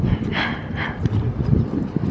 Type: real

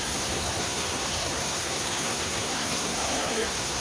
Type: fake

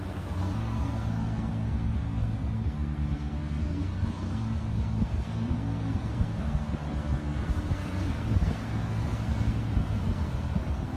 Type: fake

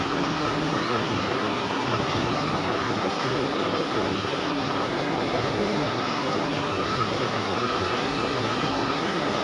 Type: fake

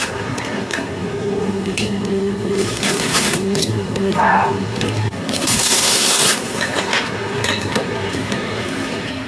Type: fake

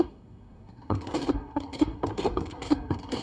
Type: fake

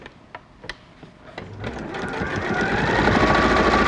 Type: real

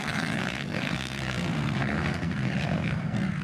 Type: fake